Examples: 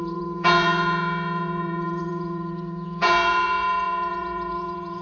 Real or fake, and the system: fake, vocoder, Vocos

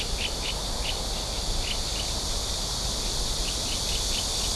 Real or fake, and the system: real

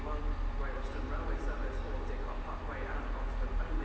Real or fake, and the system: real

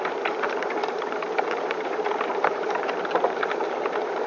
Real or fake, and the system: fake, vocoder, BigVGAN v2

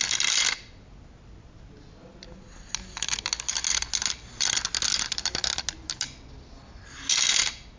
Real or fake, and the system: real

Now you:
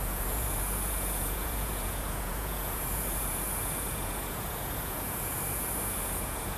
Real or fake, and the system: fake, vocoder, Vocos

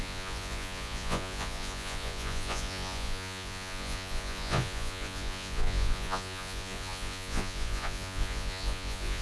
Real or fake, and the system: fake, vocoder, Vocos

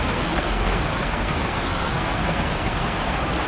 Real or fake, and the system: fake, codec, SNAC